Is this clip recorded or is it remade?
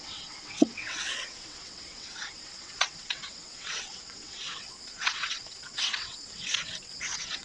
remade